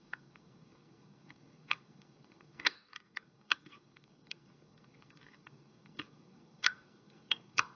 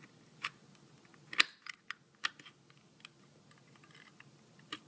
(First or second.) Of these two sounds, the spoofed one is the first